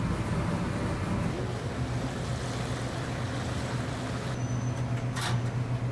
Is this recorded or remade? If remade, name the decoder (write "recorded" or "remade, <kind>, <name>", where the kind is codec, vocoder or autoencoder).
recorded